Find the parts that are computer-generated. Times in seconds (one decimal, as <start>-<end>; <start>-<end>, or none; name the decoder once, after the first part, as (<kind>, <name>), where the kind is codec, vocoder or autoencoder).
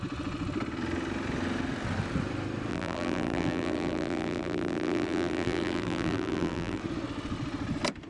2.7-6.8 (vocoder, BigVGAN v2)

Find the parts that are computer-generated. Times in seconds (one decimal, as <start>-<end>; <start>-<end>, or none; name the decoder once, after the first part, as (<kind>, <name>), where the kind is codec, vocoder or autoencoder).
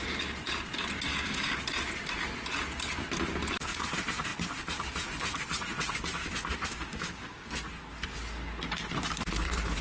1.1-1.6 (codec, DAC); 6.7-7.5